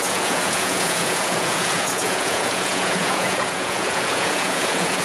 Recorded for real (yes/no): no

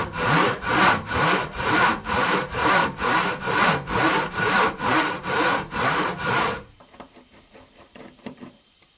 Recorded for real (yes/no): no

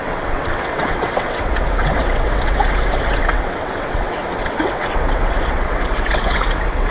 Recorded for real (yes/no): no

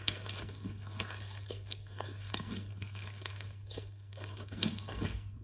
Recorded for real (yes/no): no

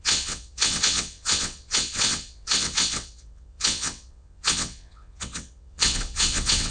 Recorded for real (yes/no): no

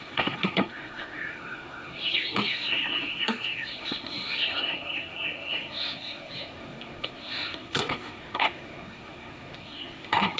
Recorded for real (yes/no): no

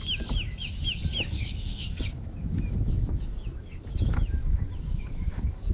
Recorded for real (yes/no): no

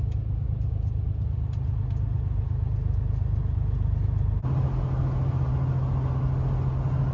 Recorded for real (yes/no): yes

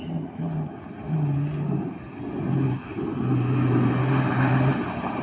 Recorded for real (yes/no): yes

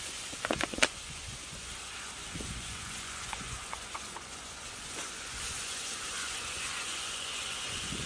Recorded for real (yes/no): no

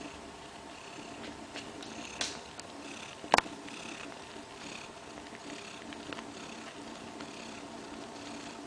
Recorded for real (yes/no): yes